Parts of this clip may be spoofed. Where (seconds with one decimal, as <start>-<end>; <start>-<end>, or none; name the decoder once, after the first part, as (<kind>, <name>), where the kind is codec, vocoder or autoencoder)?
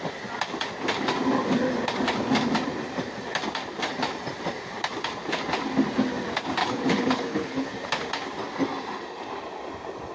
6.6-7.7 (codec, HILCodec)